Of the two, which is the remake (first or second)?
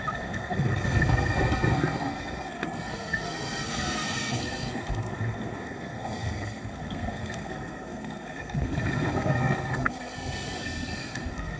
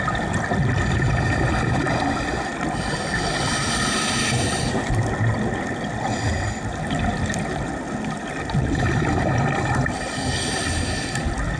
first